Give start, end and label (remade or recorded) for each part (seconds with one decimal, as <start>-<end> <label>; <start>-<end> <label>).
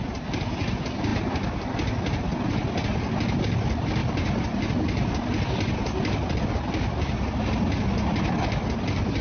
0.0-9.2 recorded